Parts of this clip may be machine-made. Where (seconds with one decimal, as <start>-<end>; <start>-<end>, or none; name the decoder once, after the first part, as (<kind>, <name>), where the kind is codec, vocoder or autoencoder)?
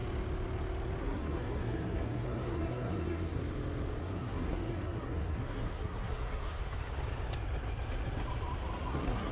1.0-3.4 (codec, SNAC); 4.0-6.6; 8.9-9.3